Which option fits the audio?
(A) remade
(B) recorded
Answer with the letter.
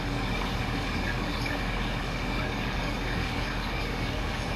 A